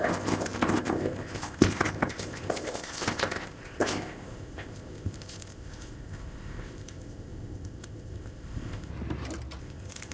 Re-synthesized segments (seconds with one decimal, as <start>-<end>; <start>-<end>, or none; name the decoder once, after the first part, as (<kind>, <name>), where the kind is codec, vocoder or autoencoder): 0.0-8.9 (codec, ZipCodec); 9.6-10.1